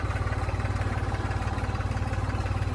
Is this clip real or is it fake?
fake